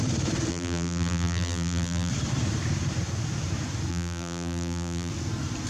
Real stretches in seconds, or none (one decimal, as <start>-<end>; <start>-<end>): 0.0-0.5; 2.1-3.9; 5.1-5.7